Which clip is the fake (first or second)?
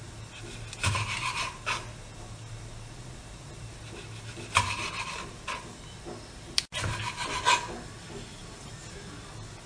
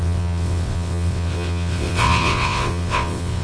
second